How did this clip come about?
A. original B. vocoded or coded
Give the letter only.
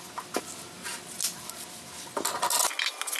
A